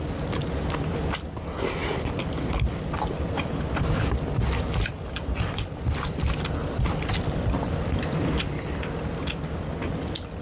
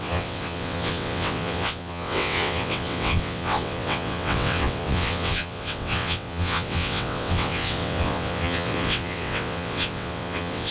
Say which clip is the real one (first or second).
first